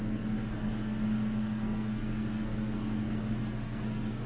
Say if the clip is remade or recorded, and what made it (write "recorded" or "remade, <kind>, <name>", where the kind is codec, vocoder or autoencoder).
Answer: remade, codec, SNAC